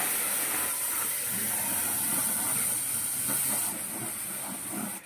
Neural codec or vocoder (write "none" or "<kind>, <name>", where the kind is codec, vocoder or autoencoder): none